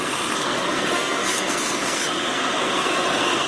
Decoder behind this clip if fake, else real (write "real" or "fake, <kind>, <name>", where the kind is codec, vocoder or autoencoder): fake, codec, SNAC